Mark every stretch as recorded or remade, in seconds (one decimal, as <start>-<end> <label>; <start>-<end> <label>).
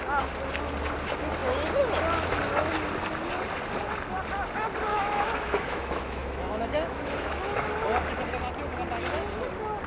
0.0-4.9 recorded; 4.9-7.7 remade; 7.7-9.9 recorded